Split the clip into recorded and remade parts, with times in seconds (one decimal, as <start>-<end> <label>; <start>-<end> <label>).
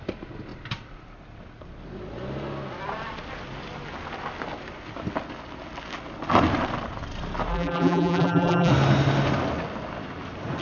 0.0-7.5 recorded; 7.5-8.7 remade; 8.7-10.6 recorded